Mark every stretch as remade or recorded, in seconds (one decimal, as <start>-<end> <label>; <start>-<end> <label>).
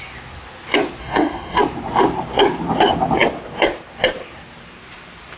0.0-1.0 recorded; 1.0-1.6 remade; 1.6-5.4 recorded